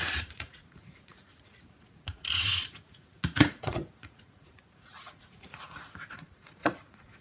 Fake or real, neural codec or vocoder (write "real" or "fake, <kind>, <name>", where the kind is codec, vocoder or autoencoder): fake, vocoder, Vocos